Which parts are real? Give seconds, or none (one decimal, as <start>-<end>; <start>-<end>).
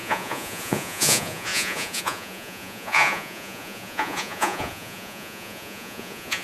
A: none